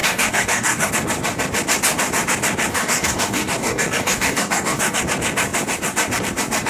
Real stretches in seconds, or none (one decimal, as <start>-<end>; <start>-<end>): 0.9-2.7; 5.0-6.7